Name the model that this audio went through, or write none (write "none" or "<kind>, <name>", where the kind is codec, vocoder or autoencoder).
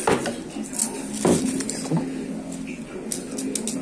none